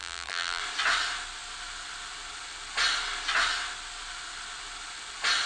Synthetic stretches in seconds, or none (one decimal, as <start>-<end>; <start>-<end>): 0.0-0.6

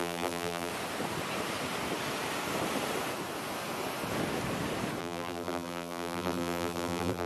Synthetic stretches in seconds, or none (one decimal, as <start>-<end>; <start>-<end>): 0.0-0.7; 5.0-7.3

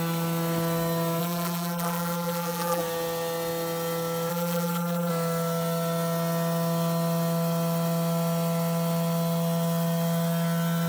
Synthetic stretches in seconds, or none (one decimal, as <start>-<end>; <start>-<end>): 1.2-2.8; 4.3-5.1

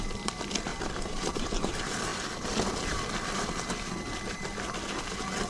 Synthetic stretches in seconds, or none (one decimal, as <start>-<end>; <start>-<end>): 0.7-1.7

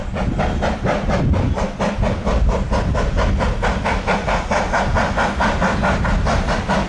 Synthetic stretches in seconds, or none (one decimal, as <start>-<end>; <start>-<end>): 4.9-6.0

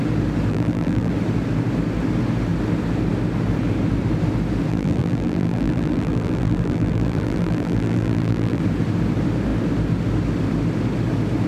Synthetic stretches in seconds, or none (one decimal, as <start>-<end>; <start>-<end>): 0.5-1.1; 4.7-8.6

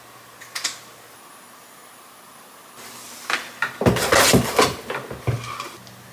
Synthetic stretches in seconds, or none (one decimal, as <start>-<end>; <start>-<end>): none